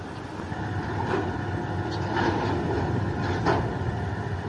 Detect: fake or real real